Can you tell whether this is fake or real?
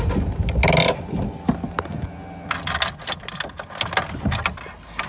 real